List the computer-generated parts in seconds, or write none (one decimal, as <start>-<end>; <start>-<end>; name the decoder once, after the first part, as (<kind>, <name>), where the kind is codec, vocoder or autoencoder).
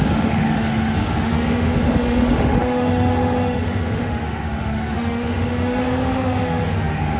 0.0-7.2 (autoencoder, DAC-VAE)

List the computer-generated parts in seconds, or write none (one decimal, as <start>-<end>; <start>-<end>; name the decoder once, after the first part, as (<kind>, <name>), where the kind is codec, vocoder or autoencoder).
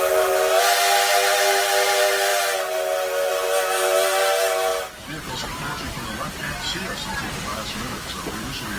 7.5-8.1 (autoencoder, DAC-VAE)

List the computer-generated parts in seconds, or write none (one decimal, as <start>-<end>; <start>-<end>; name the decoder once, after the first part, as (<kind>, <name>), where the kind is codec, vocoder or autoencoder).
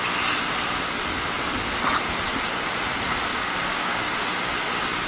3.3-4.0 (codec, DAC)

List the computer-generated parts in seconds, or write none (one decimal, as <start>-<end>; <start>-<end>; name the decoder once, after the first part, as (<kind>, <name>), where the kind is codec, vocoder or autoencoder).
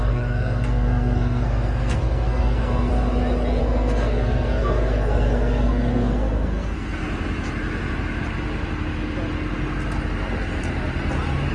0.0-2.9 (codec, SNAC); 3.6-7.0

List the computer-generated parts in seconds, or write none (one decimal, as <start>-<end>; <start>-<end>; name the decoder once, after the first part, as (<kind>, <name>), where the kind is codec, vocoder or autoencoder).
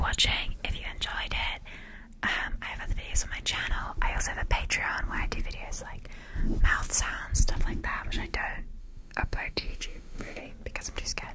8.8-10.4 (autoencoder, DAC-VAE)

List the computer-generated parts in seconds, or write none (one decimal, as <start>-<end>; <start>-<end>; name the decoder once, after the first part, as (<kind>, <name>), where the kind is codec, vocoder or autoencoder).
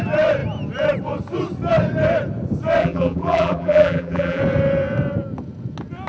2.8-4.4 (vocoder, BigVGAN v2)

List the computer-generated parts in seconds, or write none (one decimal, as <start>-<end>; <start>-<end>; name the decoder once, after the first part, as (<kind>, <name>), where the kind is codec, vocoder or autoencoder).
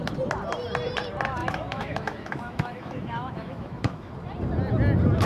1.4-4.1 (autoencoder, DAC-VAE)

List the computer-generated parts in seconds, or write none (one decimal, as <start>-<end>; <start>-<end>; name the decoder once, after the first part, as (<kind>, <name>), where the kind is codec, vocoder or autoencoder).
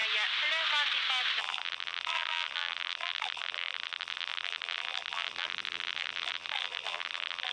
1.4-7.5 (vocoder, BigVGAN v2)